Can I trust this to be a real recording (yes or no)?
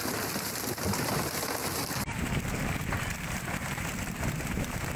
no